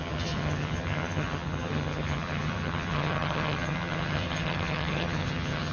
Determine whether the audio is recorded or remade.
remade